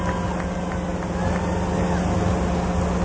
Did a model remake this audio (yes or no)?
no